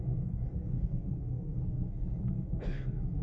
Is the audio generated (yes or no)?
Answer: yes